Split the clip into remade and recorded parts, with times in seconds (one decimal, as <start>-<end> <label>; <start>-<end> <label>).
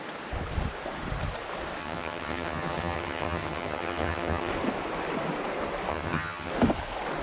0.0-1.8 recorded; 1.8-4.5 remade; 4.5-5.9 recorded; 5.9-6.5 remade; 6.5-7.2 recorded